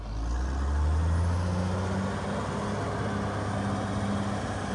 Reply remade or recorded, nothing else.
recorded